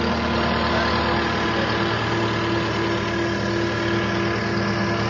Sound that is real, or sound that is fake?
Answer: real